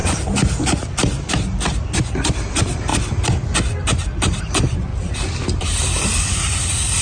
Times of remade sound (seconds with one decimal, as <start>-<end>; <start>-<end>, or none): 2.1-2.9; 4.4-4.9; 5.6-7.0